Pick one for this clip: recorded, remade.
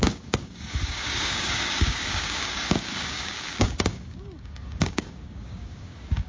remade